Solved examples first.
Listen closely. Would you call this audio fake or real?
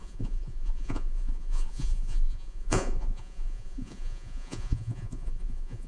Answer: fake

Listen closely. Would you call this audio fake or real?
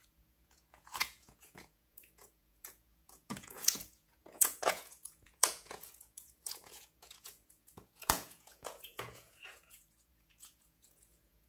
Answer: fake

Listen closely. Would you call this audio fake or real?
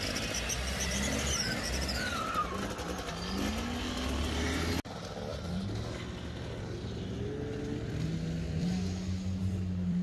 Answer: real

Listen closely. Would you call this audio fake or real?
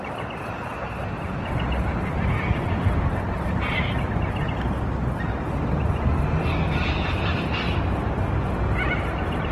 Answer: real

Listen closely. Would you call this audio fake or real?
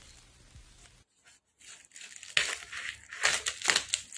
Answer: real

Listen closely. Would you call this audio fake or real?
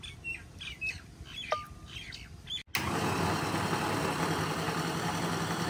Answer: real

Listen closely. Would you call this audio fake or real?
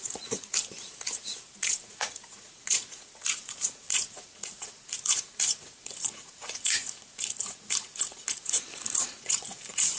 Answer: fake